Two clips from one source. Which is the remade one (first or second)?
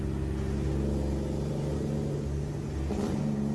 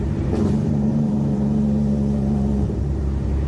second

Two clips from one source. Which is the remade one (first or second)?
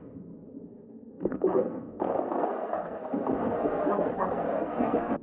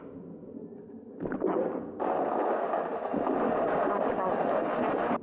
first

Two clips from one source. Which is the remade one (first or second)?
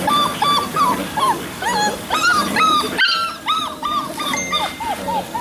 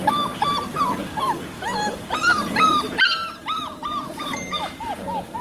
second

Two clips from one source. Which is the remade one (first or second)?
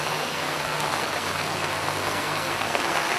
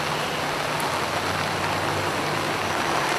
first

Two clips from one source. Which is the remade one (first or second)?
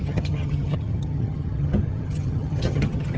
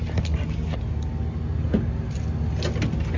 first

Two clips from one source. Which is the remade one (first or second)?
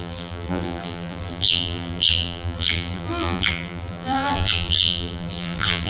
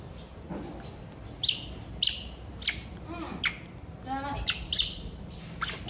first